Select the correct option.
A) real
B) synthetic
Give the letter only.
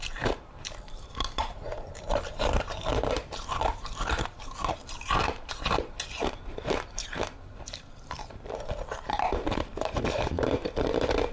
B